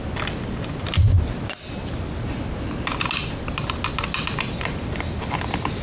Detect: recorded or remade recorded